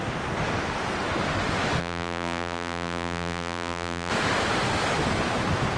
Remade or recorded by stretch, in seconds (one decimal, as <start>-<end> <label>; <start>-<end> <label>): 0.0-1.8 recorded; 1.8-4.1 remade; 4.1-5.8 recorded